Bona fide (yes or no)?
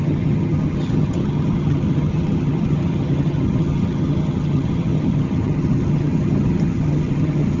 no